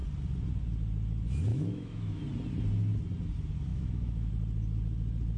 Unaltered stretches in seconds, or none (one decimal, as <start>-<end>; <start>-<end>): 0.0-1.5; 2.2-3.7; 4.3-5.4